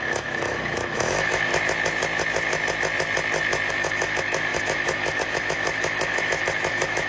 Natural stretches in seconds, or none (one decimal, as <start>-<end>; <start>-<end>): 1.5-3.7